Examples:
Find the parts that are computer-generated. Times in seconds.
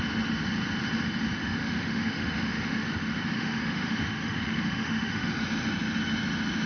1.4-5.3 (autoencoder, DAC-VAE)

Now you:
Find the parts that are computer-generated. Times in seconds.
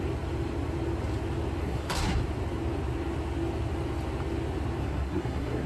1.6-2.2 (codec, SNAC); 4.8-5.7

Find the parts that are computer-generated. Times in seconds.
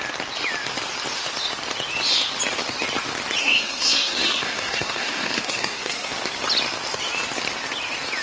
3.4-6.1 (codec, SNAC)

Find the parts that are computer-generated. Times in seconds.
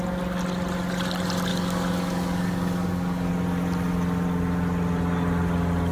1.5-3.3 (codec, DAC)